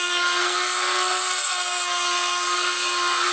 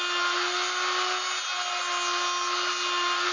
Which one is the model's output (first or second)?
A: first